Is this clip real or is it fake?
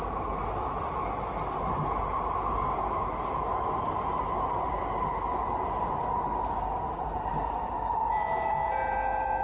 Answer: real